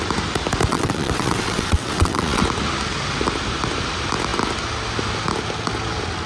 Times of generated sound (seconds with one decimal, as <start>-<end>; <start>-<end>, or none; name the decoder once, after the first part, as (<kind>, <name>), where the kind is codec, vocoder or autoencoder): 0.7-2.4 (vocoder, WaveNeXt)